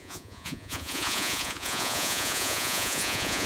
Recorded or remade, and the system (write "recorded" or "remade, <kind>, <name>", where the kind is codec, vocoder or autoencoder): remade, vocoder, Vocos